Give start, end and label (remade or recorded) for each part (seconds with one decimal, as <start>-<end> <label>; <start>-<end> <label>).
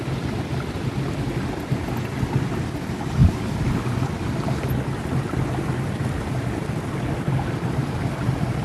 0.0-3.2 recorded; 3.2-3.8 remade; 3.8-8.6 recorded